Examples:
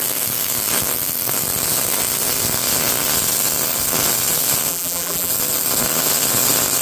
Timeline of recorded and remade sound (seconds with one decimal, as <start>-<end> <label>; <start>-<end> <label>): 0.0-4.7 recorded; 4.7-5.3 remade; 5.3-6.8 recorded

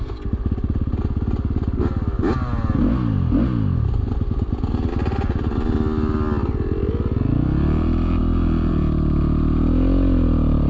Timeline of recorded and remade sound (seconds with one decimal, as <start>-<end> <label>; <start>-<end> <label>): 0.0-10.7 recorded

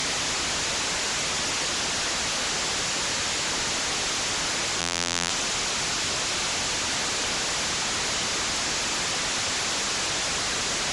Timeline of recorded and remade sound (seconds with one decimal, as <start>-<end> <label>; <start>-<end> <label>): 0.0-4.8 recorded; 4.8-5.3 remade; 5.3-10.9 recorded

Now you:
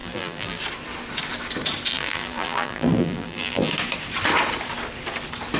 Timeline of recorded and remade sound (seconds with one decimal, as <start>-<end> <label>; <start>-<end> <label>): 0.0-0.6 remade; 0.6-1.9 recorded; 1.9-3.7 remade; 3.7-5.6 recorded

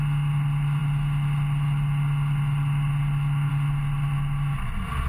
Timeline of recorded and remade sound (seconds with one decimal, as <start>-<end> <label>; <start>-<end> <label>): 0.0-5.1 recorded